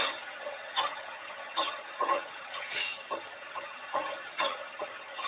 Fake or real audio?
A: fake